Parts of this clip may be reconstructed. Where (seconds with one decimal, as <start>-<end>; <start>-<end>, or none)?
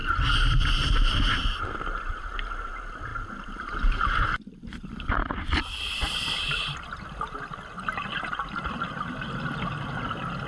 3.1-6.4